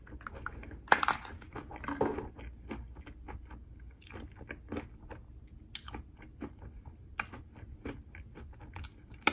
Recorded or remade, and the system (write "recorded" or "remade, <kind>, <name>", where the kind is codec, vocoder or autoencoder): recorded